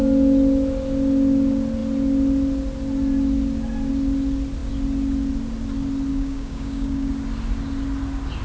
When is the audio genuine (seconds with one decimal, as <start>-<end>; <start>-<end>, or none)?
0.0-6.1; 7.1-8.4